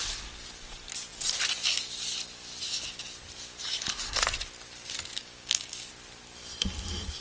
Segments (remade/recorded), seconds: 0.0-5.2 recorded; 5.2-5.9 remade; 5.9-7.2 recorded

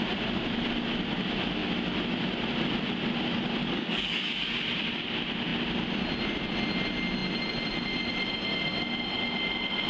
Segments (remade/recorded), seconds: 0.0-3.6 recorded; 3.6-4.3 remade; 4.3-9.9 recorded